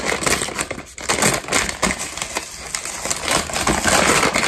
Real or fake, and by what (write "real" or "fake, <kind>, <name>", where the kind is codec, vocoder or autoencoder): real